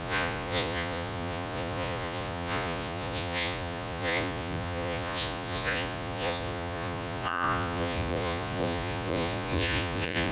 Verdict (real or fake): fake